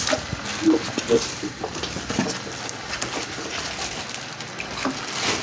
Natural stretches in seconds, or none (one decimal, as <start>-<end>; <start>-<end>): 0.0-5.4